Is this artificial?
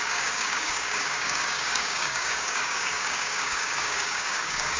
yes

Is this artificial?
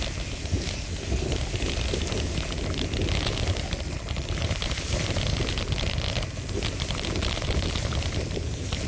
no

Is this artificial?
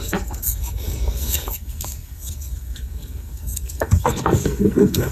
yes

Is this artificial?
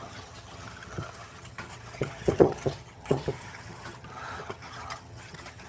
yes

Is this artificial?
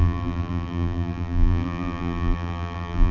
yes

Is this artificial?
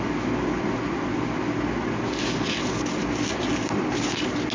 no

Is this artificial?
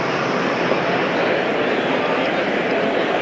yes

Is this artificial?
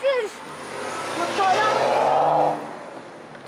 no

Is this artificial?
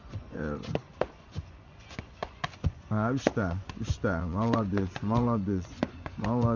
yes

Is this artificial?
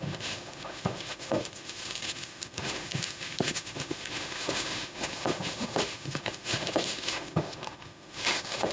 yes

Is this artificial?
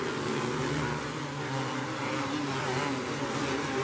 no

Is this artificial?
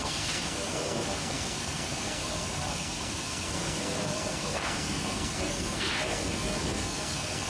yes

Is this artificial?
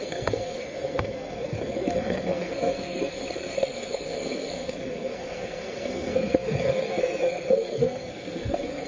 yes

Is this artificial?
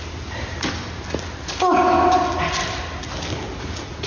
no